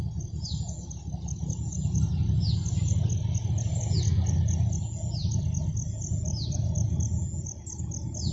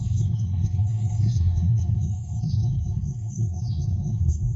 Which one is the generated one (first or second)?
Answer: second